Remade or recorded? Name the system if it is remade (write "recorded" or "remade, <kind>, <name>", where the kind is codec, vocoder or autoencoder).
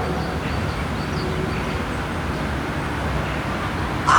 recorded